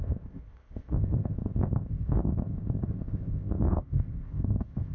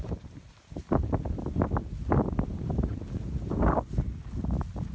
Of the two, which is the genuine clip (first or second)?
second